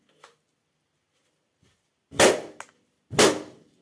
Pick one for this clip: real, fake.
real